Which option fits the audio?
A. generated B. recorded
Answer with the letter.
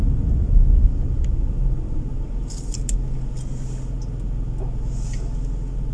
B